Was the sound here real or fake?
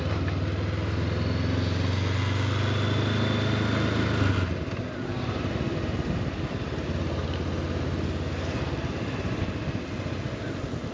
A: real